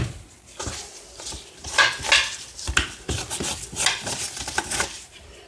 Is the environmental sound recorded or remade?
recorded